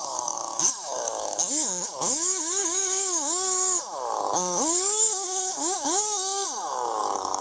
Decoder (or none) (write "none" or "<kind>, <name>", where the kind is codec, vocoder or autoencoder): codec, DAC